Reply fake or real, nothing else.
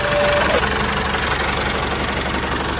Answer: real